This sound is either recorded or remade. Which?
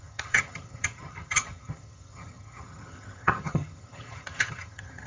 remade